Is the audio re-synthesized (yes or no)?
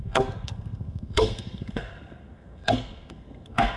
yes